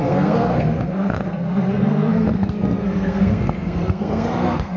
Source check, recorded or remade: remade